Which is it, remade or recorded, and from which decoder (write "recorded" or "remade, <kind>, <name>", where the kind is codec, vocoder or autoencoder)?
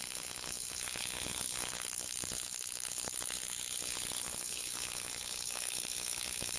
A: remade, codec, HILCodec